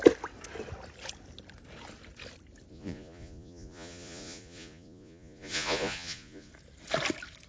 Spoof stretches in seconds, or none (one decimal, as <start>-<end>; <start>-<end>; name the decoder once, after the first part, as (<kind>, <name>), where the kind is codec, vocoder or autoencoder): 2.7-6.5 (vocoder, Vocos)

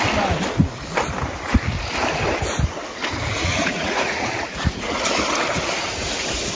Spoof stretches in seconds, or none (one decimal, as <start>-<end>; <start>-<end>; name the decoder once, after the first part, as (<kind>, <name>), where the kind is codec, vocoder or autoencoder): 3.4-5.0 (vocoder, Vocos)

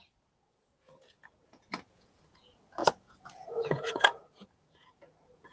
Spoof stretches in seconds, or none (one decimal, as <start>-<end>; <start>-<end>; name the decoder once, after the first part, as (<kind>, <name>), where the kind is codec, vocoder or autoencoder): 0.0-5.5 (vocoder, Vocos)

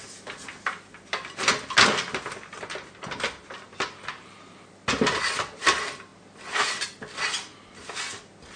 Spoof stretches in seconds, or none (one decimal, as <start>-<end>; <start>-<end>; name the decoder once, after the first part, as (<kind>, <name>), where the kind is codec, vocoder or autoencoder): none

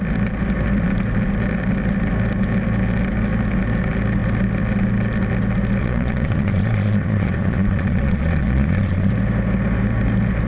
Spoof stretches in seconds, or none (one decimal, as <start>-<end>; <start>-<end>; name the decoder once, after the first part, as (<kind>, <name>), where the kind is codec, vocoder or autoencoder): 5.8-9.1 (vocoder, Vocos)

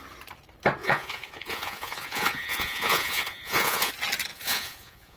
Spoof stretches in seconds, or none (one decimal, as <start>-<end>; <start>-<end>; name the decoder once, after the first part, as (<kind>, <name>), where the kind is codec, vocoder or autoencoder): 0.8-3.9 (vocoder, Vocos); 4.3-5.2